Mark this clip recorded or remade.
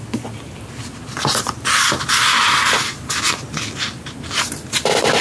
recorded